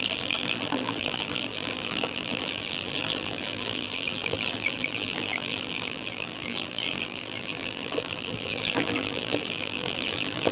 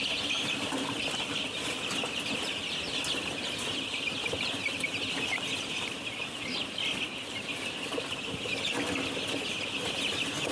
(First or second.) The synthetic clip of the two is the first